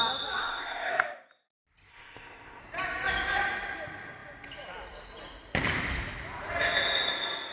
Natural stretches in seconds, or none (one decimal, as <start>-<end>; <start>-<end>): 0.0-0.4; 0.9-1.9; 2.6-7.5